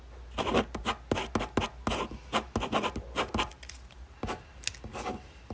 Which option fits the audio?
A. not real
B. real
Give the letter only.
B